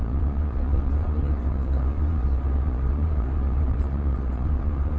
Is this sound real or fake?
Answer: fake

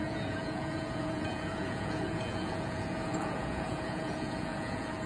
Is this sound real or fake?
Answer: fake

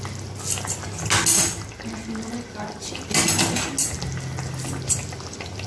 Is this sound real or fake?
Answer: real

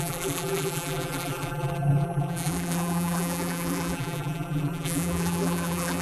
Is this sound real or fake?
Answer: fake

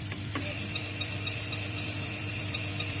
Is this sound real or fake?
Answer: fake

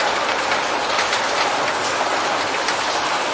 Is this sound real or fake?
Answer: fake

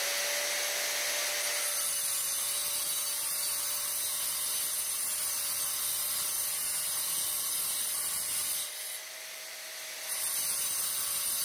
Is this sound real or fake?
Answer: real